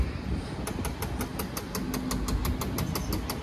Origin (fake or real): real